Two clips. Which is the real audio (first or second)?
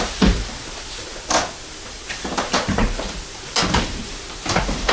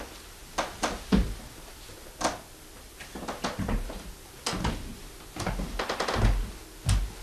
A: second